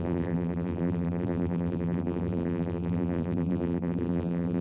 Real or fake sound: fake